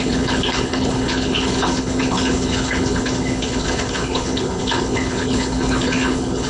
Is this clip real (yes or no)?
no